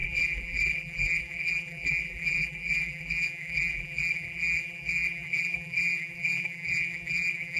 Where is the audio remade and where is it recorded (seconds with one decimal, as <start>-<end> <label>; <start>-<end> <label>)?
0.0-7.6 remade